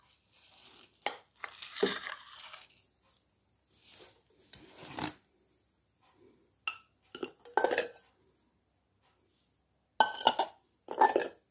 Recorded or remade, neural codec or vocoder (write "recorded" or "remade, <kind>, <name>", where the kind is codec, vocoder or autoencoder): recorded